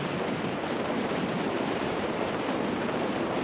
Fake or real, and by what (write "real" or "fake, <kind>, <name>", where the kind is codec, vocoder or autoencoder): fake, vocoder, BigVGAN v2